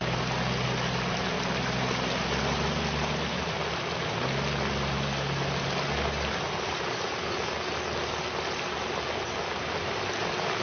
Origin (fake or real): real